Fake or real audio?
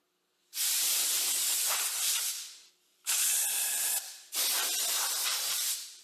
fake